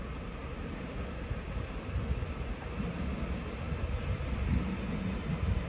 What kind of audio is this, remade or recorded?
recorded